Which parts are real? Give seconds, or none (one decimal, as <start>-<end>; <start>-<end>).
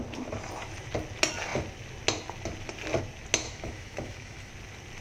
0.0-3.4; 4.5-5.0